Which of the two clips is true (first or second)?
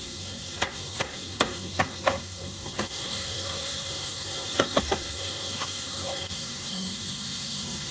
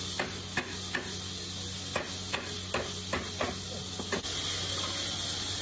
second